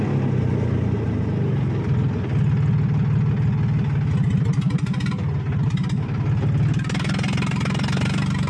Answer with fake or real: real